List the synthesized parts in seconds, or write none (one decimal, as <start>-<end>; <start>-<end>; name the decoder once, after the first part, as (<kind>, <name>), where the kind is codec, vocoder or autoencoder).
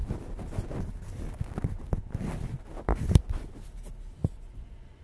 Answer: 4.2-5.0 (vocoder, Vocos)